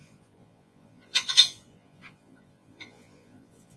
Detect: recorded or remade remade